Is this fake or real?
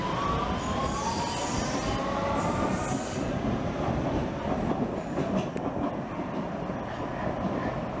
real